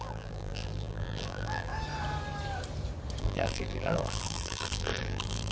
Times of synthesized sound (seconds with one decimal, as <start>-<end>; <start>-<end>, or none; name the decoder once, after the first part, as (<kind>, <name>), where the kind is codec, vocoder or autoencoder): 0.0-1.7 (vocoder, BigVGAN v2); 3.2-5.5